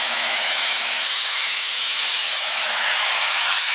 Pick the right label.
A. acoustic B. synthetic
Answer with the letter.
B